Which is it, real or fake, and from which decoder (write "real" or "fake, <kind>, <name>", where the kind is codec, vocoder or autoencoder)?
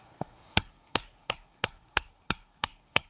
fake, codec, SNAC